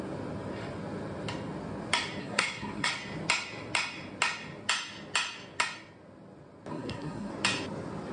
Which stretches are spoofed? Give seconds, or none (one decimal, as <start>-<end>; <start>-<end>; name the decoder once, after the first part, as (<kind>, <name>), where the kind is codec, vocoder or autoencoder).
2.2-2.9 (codec, SNAC); 6.7-7.3